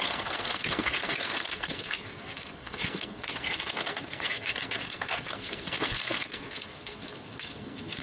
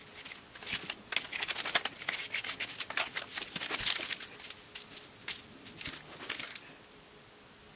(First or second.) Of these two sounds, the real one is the second